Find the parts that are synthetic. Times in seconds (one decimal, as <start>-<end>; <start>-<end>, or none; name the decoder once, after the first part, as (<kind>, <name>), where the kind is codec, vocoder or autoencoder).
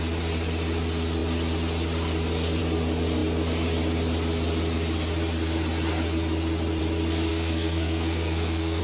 7.3-8.8 (codec, SNAC)